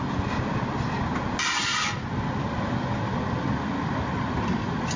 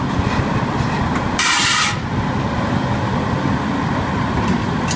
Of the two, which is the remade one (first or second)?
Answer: second